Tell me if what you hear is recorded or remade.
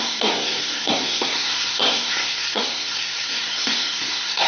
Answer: remade